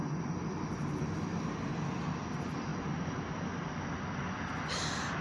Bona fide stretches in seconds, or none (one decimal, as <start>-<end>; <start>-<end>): 0.0-5.2